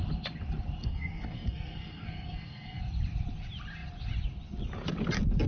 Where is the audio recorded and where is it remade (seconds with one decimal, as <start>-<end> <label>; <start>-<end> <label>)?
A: 0.0-0.8 recorded; 0.8-2.8 remade; 2.8-5.5 recorded